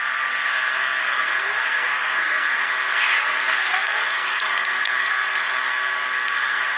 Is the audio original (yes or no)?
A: no